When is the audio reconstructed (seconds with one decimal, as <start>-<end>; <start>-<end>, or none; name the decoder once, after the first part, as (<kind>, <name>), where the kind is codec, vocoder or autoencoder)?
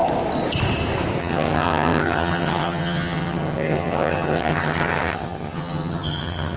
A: 1.2-6.6 (vocoder, HiFi-GAN)